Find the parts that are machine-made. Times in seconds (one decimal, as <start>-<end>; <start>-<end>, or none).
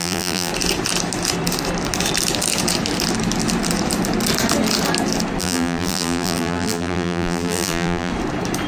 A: 0.0-0.5; 5.4-8.1